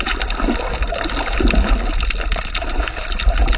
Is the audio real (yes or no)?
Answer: yes